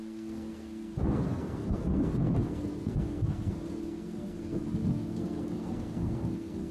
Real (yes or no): no